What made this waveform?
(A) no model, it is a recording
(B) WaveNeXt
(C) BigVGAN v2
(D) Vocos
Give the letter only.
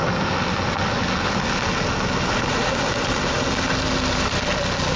A